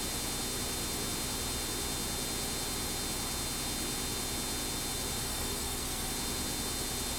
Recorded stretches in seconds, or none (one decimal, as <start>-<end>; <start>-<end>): 0.0-5.2; 6.1-7.2